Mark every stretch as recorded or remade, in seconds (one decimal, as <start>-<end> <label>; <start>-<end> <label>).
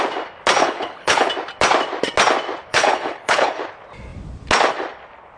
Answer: 0.0-0.6 recorded; 0.6-1.3 remade; 1.3-2.7 recorded; 2.7-3.6 remade; 3.6-5.4 recorded